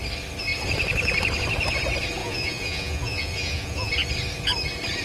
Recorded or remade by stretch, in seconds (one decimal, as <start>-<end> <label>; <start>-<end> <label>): 0.0-2.2 recorded; 2.2-3.9 remade; 3.9-5.0 recorded